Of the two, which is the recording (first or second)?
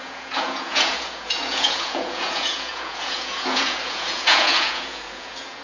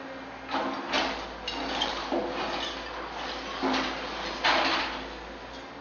second